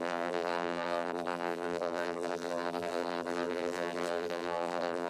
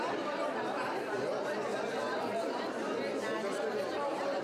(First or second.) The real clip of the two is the second